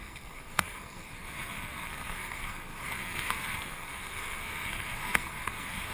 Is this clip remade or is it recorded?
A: remade